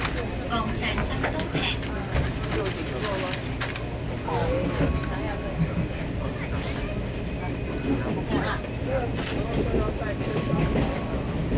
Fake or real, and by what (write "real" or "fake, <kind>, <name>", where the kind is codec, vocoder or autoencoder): real